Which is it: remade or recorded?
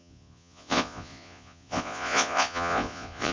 remade